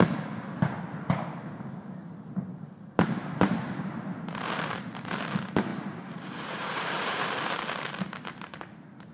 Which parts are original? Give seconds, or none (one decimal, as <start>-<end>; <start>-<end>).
0.0-2.5; 5.2-5.7; 8.4-9.1